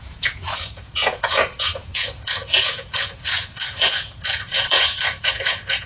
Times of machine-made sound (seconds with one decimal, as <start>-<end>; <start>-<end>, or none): 0.0-5.9